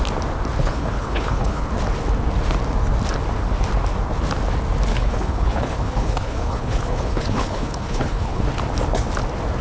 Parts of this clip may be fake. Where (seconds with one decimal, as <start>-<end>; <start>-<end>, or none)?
0.6-1.7; 4.9-8.4

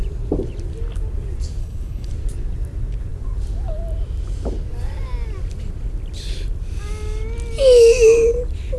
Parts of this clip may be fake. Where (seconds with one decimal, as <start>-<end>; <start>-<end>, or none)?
1.6-2.1

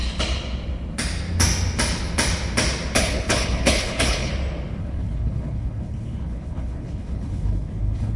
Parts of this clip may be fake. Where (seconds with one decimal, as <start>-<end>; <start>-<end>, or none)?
3.0-4.3; 4.8-8.2

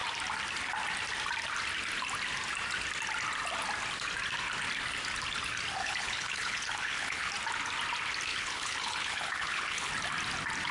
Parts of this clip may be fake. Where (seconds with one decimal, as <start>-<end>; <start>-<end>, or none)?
5.8-7.3; 8.3-9.9

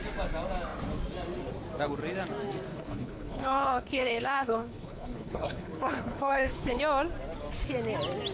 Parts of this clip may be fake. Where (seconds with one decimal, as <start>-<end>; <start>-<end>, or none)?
2.7-6.8

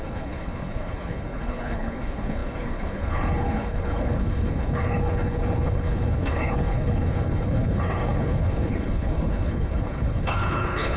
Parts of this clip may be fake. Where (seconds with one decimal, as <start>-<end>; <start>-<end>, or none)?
0.0-11.0

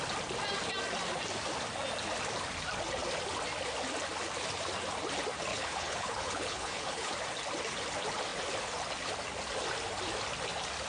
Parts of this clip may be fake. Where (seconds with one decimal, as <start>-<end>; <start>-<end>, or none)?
5.5-7.1